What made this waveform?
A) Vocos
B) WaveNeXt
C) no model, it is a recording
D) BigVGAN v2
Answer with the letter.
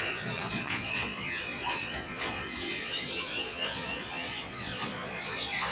A